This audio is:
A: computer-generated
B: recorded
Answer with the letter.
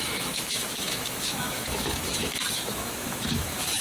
A